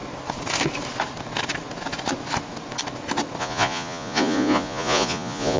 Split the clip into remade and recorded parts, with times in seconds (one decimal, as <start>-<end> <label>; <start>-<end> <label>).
0.0-3.4 recorded; 3.4-5.6 remade